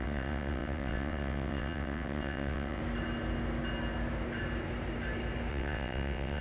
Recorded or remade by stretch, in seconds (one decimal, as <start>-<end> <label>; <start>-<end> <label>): 0.0-2.8 remade; 2.8-5.5 recorded; 5.5-6.4 remade